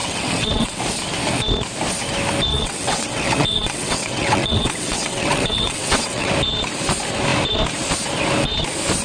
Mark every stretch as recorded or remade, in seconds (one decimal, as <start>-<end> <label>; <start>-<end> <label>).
0.0-0.8 remade; 0.8-2.5 recorded; 2.5-6.3 remade; 6.3-9.0 recorded